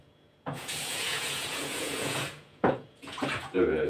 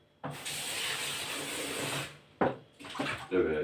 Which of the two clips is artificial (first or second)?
first